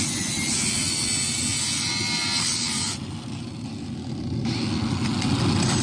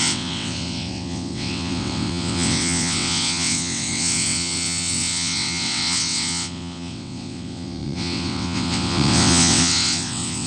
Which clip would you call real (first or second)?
first